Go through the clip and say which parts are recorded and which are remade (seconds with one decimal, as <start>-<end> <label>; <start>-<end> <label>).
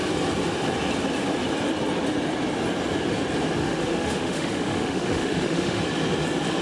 0.0-3.6 recorded; 3.6-5.8 remade; 5.8-6.6 recorded